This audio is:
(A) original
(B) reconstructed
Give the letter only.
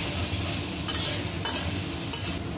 A